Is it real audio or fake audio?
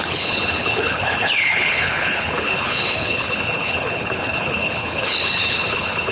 fake